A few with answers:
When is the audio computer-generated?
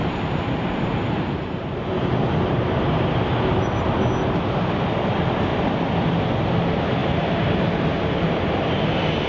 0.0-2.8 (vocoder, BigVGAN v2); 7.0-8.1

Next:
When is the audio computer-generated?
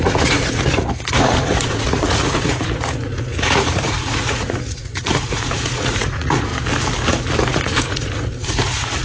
0.0-6.5 (vocoder, Vocos); 7.5-9.0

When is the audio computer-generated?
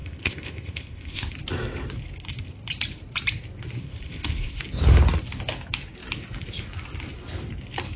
0.0-1.3 (codec, ZipCodec); 3.8-4.6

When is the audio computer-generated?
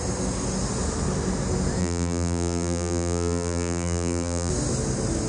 1.8-4.5 (vocoder, BigVGAN v2)